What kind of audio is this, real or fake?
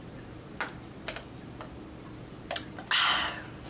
real